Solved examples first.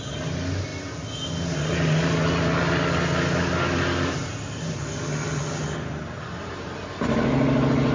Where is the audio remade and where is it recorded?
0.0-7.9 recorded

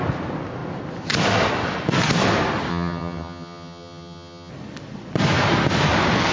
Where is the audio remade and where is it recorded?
0.0-2.7 recorded; 2.7-4.5 remade; 4.5-6.3 recorded

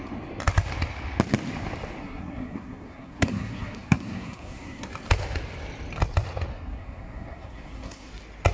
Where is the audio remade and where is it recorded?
0.0-2.0 recorded; 2.0-4.9 remade; 4.9-6.5 recorded; 6.5-8.1 remade; 8.1-8.5 recorded

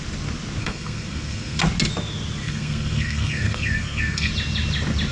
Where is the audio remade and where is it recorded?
0.0-0.6 recorded; 0.6-1.6 remade; 1.6-2.4 recorded; 2.4-4.3 remade; 4.3-5.1 recorded

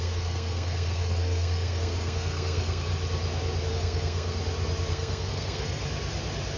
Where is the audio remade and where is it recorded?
0.0-2.9 remade; 2.9-3.7 recorded; 3.7-4.4 remade; 4.4-4.9 recorded; 4.9-5.8 remade; 5.8-6.6 recorded